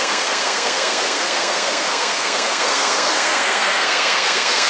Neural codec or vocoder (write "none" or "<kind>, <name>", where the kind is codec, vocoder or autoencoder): codec, SNAC